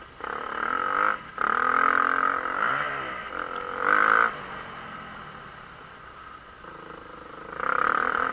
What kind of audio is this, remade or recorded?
recorded